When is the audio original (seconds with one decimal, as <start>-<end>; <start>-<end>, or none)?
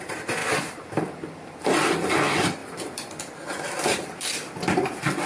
0.0-0.4; 2.1-2.6; 3.5-5.3